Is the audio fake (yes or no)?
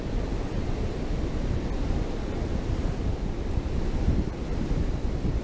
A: no